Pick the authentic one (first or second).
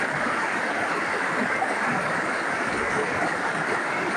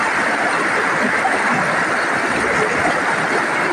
second